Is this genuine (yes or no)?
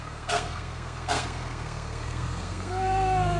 no